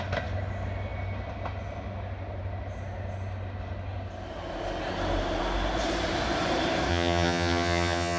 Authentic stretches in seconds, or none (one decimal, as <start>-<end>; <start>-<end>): 0.0-6.9